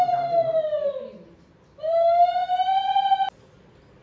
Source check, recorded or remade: recorded